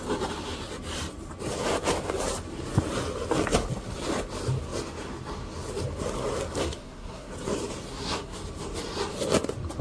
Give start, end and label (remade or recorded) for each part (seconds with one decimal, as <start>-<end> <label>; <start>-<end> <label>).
0.0-6.6 recorded; 6.6-7.3 remade; 7.3-7.9 recorded; 7.9-8.4 remade; 8.4-9.8 recorded